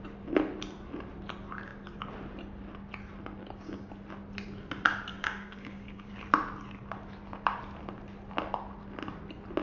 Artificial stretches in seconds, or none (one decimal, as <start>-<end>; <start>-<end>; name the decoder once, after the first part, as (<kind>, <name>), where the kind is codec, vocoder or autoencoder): 3.4-3.9 (codec, DAC); 5.1-6.1